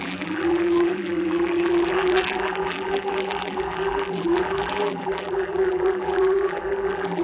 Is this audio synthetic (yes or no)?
yes